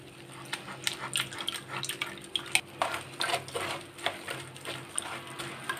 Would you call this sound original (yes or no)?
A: yes